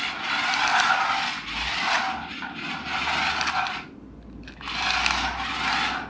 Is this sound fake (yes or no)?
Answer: no